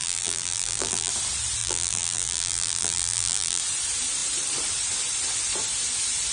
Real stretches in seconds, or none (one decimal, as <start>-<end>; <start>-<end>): 1.1-1.6; 3.6-6.3